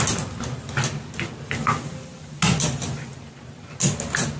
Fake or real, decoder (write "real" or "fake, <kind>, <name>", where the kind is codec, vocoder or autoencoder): real